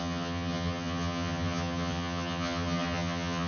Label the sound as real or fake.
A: fake